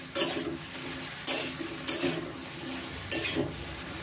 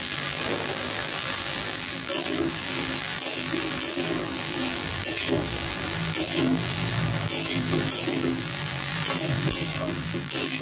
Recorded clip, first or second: first